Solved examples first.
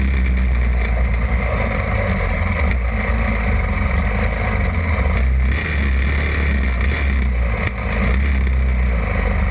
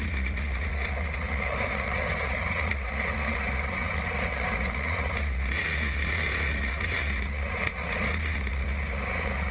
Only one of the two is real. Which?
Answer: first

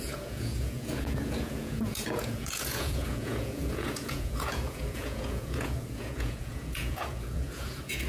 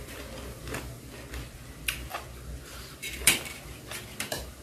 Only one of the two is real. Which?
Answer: second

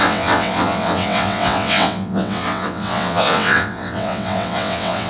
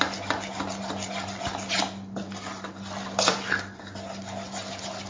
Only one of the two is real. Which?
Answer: second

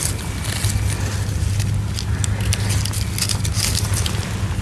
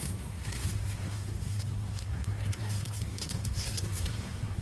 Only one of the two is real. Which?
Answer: first